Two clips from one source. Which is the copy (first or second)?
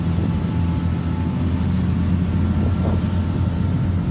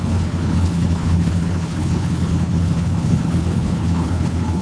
second